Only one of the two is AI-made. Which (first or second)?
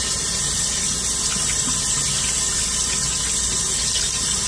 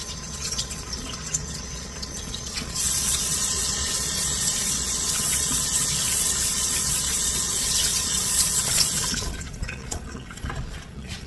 second